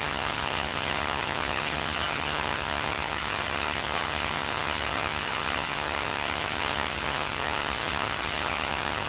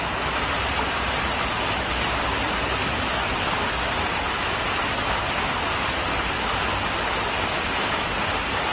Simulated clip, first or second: first